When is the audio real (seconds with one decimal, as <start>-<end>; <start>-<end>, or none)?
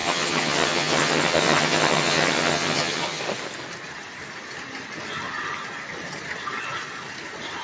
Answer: 3.2-7.6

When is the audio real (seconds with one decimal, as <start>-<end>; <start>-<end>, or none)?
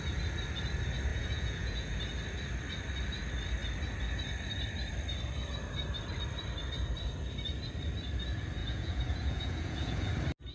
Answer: 0.0-1.1; 2.0-8.6; 10.1-10.5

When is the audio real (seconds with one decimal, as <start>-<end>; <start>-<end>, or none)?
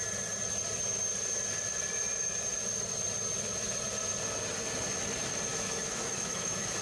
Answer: 0.0-5.5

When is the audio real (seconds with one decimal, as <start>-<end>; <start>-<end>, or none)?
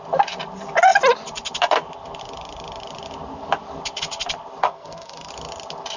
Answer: 0.0-4.6; 5.3-6.0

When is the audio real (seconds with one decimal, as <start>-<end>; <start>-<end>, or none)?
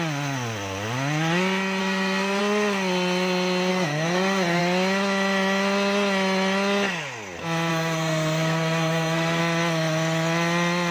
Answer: 0.0-1.8; 2.4-3.7; 4.6-7.7; 9.4-10.9